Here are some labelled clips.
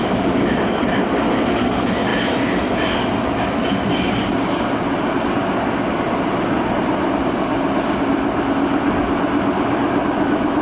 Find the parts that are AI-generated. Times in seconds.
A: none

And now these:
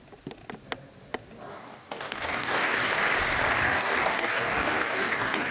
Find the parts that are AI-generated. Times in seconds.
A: 1.5-2.9 (codec, DAC); 3.6-5.5

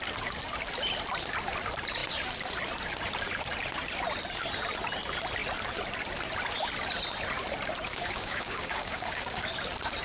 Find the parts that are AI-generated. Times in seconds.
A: 7.9-9.5 (codec, DAC)

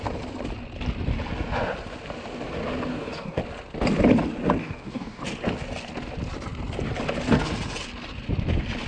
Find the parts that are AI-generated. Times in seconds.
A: 2.9-3.4 (codec, DAC); 4.6-5.2

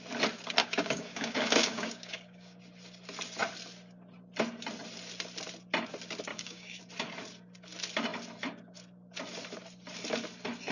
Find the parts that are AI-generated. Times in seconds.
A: 0.6-2.6 (codec, DAC); 6.3-6.8

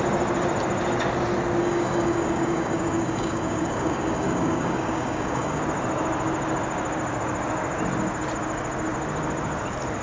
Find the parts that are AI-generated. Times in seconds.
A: 1.6-5.6 (codec, DAC)